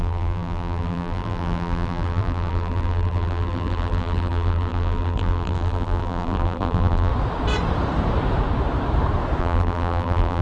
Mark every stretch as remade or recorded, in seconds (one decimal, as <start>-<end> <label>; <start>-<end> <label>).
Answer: 0.0-7.1 remade; 7.1-9.4 recorded; 9.4-10.4 remade